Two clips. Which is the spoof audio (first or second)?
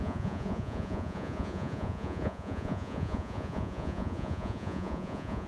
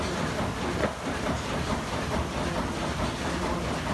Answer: first